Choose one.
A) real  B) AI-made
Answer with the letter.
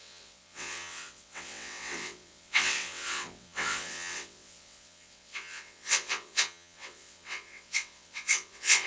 B